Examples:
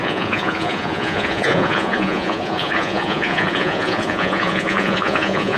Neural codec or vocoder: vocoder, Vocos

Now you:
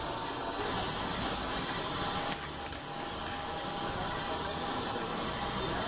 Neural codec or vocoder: none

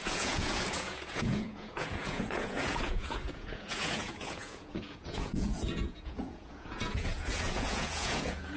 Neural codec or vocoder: vocoder, Vocos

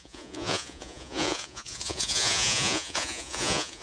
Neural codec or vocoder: vocoder, Vocos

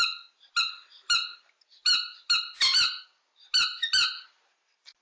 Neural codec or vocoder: none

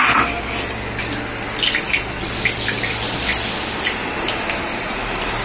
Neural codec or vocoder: none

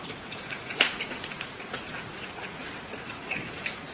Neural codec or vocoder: vocoder, Vocos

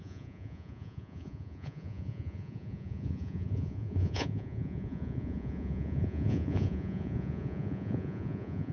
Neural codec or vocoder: vocoder, Vocos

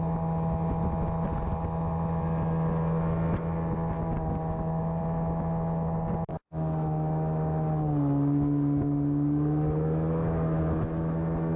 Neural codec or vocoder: none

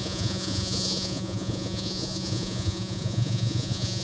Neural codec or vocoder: vocoder, Vocos